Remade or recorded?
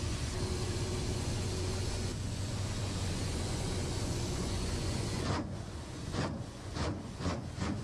remade